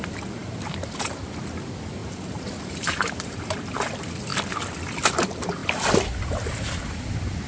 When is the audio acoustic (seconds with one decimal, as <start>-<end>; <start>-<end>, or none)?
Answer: 0.0-0.4; 1.2-2.0; 3.7-7.5